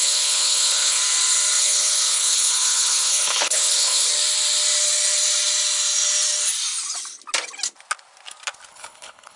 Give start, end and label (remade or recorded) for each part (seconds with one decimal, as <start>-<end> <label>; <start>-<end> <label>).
0.0-1.0 remade; 1.0-1.6 recorded; 1.6-4.1 remade; 4.1-8.7 recorded; 8.7-9.4 remade